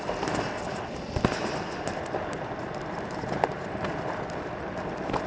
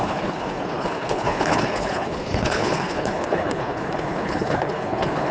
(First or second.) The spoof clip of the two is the second